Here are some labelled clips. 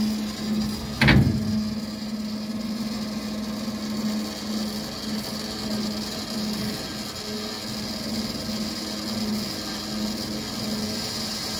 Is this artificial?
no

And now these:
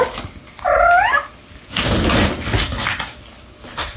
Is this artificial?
no